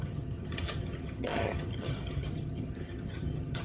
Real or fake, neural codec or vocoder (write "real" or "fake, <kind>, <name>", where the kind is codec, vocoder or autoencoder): fake, vocoder, HiFi-GAN